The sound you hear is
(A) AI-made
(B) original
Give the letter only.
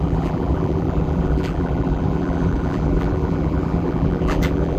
A